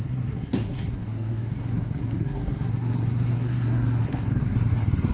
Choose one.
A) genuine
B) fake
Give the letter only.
B